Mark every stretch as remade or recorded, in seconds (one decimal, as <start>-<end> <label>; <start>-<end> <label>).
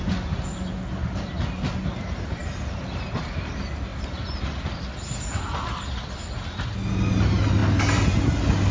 0.0-8.7 recorded